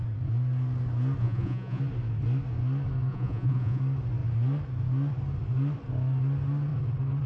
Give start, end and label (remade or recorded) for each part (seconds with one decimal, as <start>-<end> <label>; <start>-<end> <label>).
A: 0.0-1.2 recorded; 1.2-1.8 remade; 1.8-3.1 recorded; 3.1-3.8 remade; 3.8-7.3 recorded